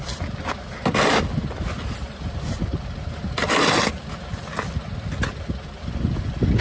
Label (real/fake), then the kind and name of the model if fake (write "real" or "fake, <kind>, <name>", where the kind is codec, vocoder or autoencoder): real